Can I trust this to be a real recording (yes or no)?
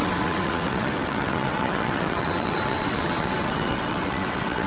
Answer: no